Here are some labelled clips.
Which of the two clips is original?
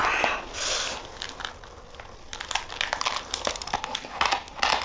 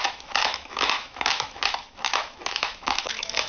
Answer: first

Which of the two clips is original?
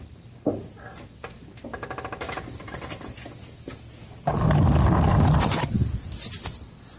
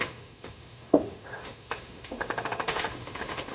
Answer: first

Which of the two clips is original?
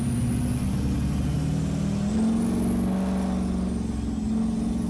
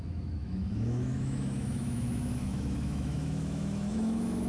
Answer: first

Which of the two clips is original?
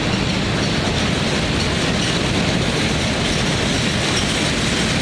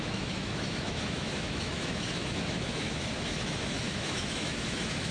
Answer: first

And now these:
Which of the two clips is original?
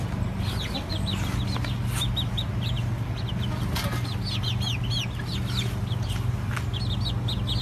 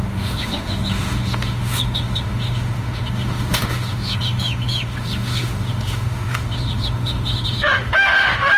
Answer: first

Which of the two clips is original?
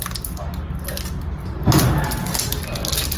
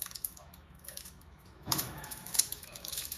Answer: first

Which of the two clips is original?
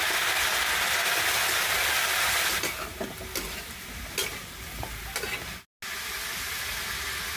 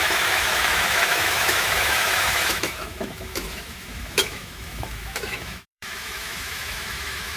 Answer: first